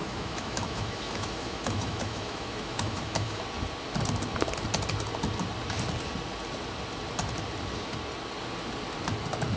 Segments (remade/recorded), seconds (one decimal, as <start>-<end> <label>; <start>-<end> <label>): 0.0-3.4 remade; 3.4-9.6 recorded